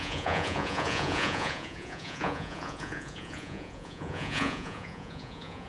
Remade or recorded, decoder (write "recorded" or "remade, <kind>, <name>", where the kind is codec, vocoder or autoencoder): remade, vocoder, Vocos